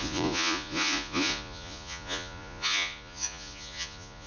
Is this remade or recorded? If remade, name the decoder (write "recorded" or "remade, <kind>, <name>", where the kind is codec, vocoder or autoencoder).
remade, vocoder, Vocos